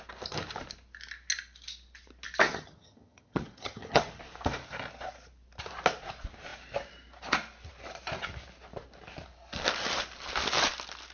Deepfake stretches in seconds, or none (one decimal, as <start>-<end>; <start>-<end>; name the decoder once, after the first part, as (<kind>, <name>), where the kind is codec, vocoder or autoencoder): 2.5-4.2 (vocoder, HiFi-GAN)